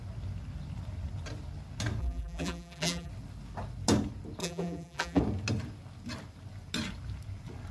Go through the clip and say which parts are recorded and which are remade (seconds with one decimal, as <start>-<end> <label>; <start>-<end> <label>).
0.0-2.0 recorded; 2.0-3.1 remade; 3.1-4.4 recorded; 4.4-5.2 remade; 5.2-7.7 recorded